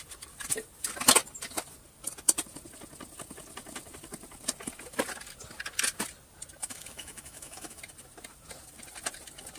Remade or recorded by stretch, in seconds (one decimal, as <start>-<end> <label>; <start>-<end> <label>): 0.0-6.6 recorded; 6.6-7.8 remade; 7.8-9.6 recorded